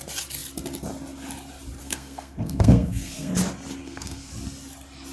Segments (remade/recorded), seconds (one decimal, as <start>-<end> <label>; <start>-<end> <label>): 0.0-1.8 recorded; 1.8-3.3 remade; 3.3-3.8 recorded; 3.8-4.3 remade; 4.3-5.1 recorded

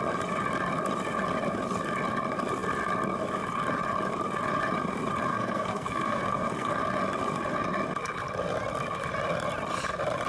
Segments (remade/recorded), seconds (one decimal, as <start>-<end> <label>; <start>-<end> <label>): 0.0-5.3 recorded; 5.3-6.7 remade; 6.7-10.3 recorded